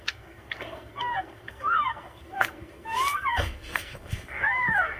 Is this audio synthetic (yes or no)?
yes